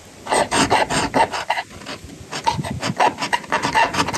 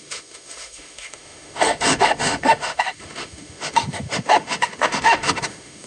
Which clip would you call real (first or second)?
first